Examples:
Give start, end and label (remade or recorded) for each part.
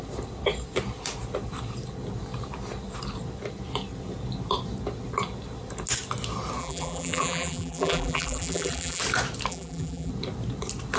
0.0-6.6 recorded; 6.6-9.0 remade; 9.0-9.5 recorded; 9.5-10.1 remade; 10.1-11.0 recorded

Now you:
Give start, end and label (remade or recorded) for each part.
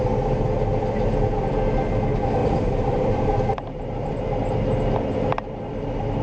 0.0-2.4 recorded; 2.4-4.1 remade; 4.1-6.2 recorded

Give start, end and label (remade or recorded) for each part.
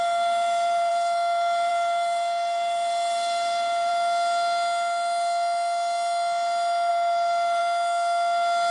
0.0-3.9 remade; 3.9-6.9 recorded; 6.9-7.6 remade; 7.6-8.7 recorded